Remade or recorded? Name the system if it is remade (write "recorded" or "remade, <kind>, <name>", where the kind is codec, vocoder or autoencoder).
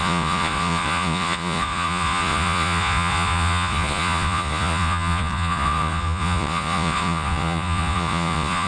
remade, vocoder, Vocos